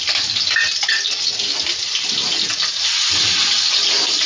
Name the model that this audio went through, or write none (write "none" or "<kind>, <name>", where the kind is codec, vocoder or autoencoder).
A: none